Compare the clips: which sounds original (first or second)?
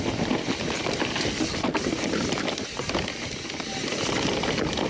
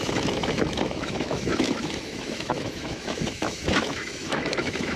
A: first